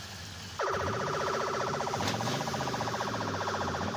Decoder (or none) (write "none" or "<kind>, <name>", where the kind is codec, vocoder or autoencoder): none